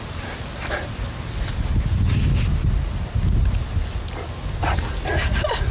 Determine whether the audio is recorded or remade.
recorded